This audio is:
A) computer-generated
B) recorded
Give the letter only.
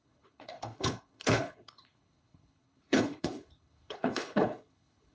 A